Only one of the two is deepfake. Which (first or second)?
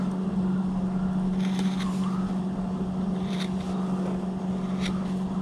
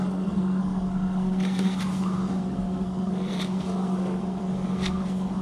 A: second